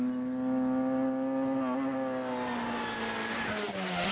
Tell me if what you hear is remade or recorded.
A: recorded